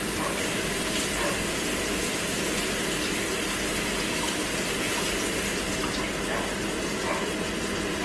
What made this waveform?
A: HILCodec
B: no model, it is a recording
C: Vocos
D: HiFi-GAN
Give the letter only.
B